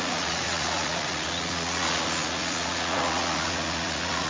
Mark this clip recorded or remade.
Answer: remade